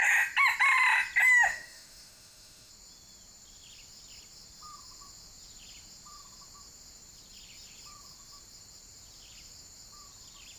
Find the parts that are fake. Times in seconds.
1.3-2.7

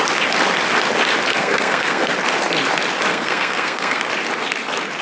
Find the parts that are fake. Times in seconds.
1.3-2.1; 3.1-4.0

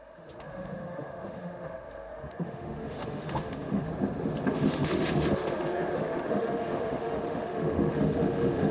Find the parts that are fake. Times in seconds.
0.0-3.9; 4.5-8.7

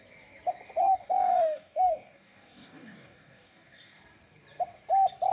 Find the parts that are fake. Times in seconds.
0.8-4.0

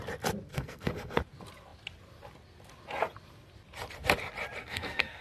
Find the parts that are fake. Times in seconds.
0.5-1.2; 4.6-5.2

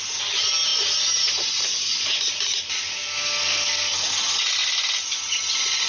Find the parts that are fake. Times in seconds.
3.0-4.1

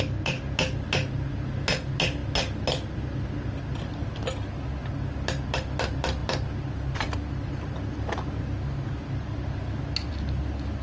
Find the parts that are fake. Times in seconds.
none